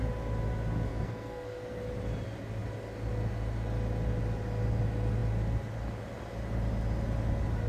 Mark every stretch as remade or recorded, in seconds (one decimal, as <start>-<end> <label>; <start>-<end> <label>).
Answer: 0.0-0.9 recorded; 0.9-1.8 remade; 1.8-7.7 recorded